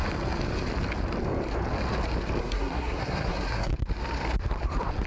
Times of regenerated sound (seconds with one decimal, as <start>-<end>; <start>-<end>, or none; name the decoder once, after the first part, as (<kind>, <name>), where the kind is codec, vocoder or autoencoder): 2.4-3.7 (codec, SNAC)